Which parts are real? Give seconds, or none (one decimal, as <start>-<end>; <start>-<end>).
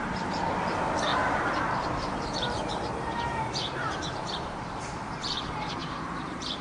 none